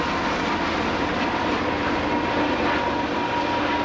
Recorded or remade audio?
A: recorded